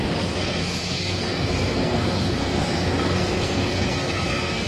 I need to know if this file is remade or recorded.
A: remade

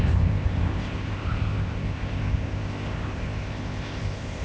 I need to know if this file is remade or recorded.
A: remade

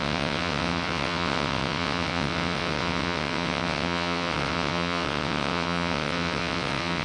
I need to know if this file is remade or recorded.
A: remade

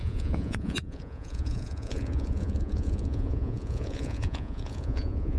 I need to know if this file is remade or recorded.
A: remade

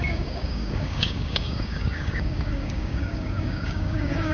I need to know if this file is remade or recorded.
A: remade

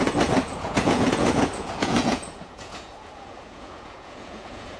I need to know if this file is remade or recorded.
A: remade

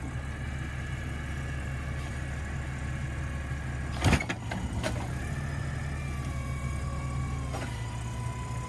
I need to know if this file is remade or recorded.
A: recorded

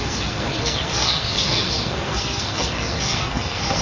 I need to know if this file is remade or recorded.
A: remade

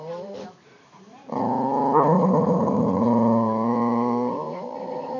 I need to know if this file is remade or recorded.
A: remade